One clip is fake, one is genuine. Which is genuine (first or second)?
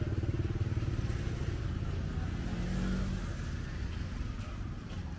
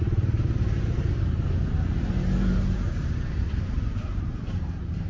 first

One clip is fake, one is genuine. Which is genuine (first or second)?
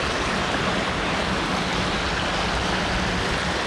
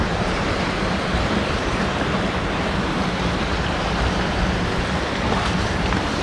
first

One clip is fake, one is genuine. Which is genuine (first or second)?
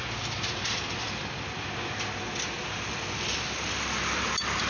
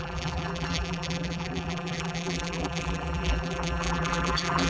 first